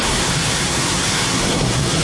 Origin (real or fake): fake